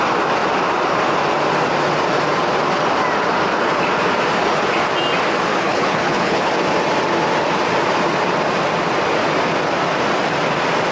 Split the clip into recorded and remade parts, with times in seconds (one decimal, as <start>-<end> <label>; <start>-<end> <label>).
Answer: 0.0-5.5 recorded; 5.5-6.5 remade; 6.5-10.9 recorded